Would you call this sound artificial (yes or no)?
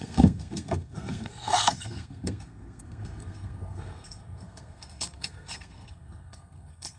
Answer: yes